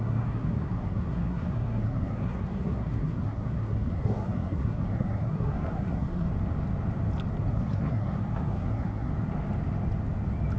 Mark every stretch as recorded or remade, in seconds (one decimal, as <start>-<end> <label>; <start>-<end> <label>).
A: 0.0-6.3 remade; 6.3-7.5 recorded; 7.5-9.1 remade; 9.1-10.6 recorded